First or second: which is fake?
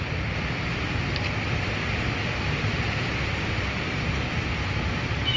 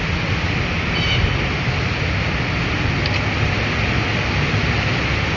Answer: first